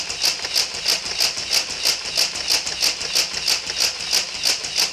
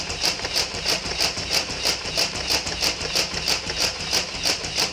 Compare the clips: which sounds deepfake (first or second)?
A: second